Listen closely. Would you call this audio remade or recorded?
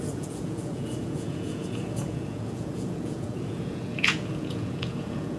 remade